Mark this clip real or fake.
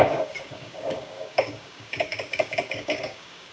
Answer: fake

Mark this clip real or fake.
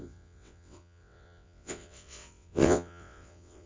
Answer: fake